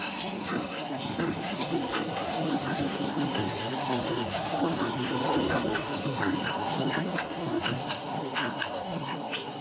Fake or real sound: fake